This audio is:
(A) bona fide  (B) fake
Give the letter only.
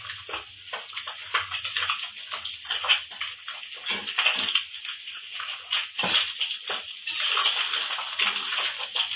A